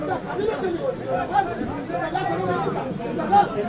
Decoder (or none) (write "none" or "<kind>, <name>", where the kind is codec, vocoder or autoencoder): none